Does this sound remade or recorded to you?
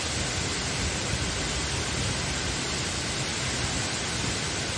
recorded